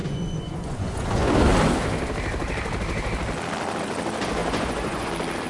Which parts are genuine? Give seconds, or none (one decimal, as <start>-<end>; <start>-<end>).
1.3-4.4; 5.1-5.5